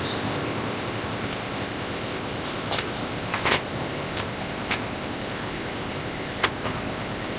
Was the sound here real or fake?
fake